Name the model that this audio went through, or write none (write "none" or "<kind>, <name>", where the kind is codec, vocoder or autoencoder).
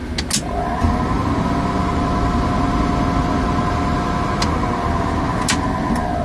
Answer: none